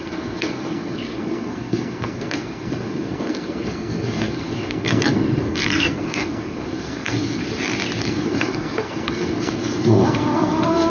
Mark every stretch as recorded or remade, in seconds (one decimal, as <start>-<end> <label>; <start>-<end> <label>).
0.0-7.4 remade; 7.4-8.0 recorded; 8.0-10.9 remade